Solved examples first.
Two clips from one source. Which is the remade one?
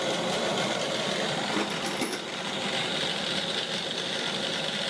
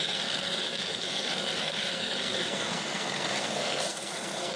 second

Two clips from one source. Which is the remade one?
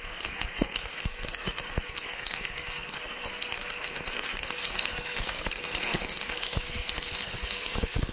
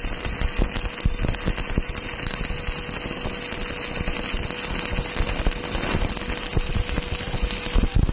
first